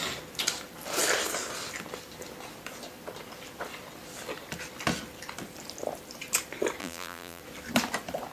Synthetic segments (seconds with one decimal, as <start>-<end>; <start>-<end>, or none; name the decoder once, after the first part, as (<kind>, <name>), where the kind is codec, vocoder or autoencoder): 6.8-7.4 (vocoder, BigVGAN v2)